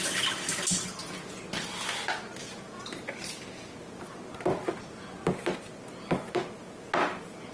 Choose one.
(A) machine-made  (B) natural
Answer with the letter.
B